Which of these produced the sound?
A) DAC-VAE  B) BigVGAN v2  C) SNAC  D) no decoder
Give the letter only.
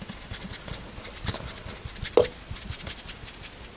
D